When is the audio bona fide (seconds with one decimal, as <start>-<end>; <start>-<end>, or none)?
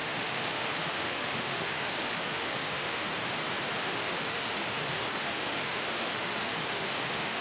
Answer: 3.1-3.8